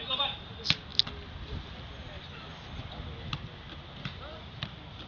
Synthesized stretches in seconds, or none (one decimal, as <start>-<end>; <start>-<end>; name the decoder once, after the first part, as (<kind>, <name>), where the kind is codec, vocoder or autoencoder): 0.0-0.9 (vocoder, BigVGAN v2); 4.0-5.1